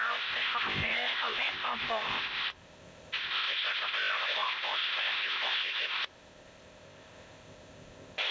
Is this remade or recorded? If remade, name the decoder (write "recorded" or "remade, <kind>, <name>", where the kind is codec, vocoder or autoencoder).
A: remade, codec, ZipCodec